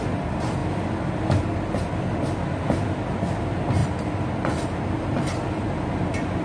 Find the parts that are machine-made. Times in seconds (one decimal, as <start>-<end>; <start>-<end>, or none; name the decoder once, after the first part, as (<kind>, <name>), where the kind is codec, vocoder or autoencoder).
none